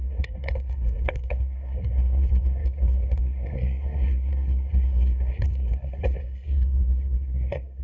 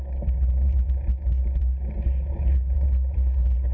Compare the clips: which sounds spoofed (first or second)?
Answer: first